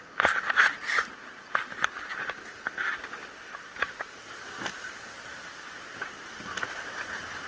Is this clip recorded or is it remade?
recorded